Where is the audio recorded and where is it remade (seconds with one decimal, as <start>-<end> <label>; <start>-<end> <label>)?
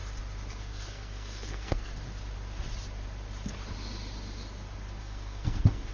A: 0.0-0.5 recorded; 0.5-1.9 remade; 1.9-5.0 recorded; 5.0-5.9 remade